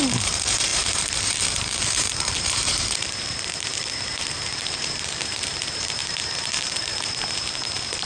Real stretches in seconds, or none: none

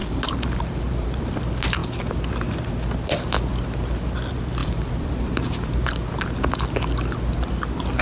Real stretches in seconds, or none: 1.2-4.6; 5.9-8.0

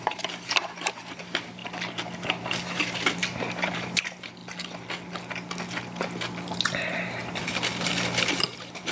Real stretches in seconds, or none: 1.6-2.8; 4.4-8.3

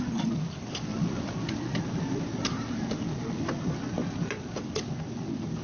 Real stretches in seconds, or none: 0.0-5.6